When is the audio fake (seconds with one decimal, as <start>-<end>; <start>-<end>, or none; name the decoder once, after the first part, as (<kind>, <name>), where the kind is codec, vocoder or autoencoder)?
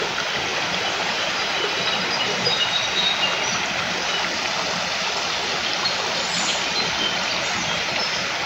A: 0.5-2.8 (vocoder, BigVGAN v2)